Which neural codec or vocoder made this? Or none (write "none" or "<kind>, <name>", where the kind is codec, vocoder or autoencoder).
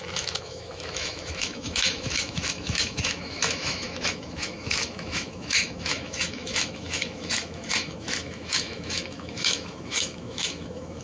autoencoder, DAC-VAE